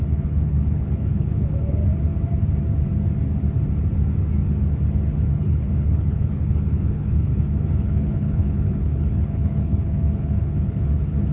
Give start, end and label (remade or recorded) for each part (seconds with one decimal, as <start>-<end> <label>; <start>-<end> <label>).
0.0-1.8 remade; 1.8-5.3 recorded; 5.3-11.3 remade